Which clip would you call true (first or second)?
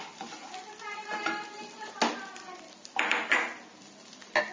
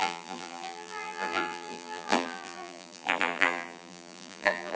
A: first